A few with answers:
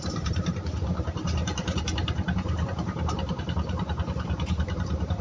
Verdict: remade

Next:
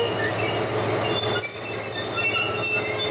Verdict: recorded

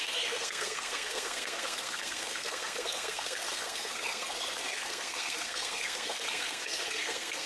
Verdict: remade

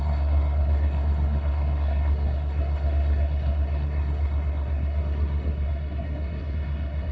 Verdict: remade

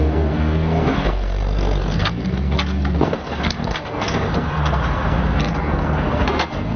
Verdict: remade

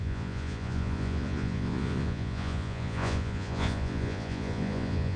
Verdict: remade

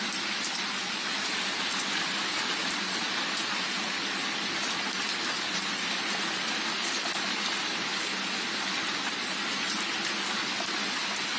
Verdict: recorded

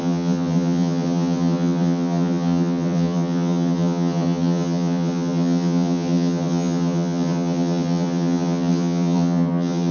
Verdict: remade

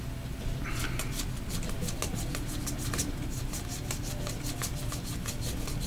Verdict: recorded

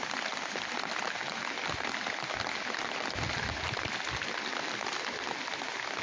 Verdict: recorded